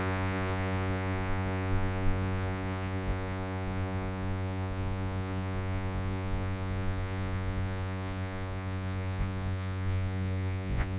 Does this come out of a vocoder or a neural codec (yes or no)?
yes